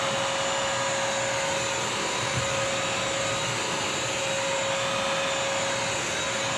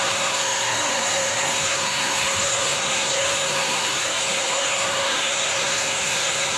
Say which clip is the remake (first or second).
second